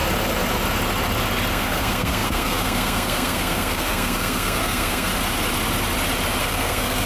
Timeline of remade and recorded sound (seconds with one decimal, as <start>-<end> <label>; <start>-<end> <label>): 0.0-1.5 recorded; 1.5-5.1 remade; 5.1-6.4 recorded; 6.4-7.1 remade